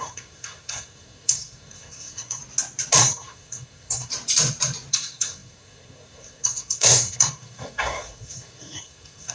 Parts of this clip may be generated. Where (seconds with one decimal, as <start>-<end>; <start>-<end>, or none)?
0.0-2.4; 3.0-4.1; 4.9-9.3